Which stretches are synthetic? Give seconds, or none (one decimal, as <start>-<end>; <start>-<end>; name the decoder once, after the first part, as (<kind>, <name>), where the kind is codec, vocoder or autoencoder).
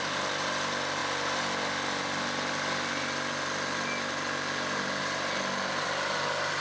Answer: none